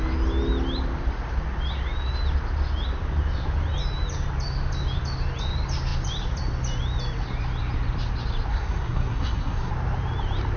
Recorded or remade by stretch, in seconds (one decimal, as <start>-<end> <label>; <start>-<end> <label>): 0.0-8.5 recorded; 8.5-9.7 remade; 9.7-10.6 recorded